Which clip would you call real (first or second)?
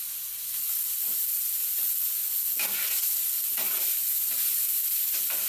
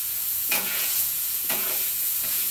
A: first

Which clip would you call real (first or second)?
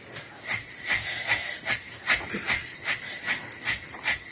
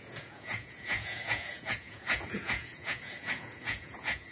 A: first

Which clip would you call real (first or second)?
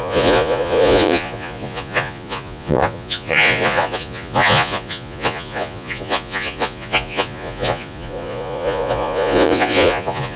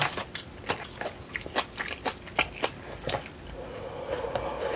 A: second